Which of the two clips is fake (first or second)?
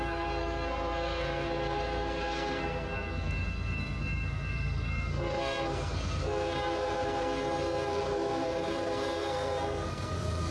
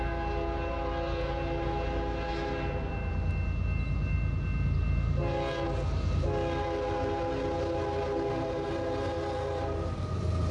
first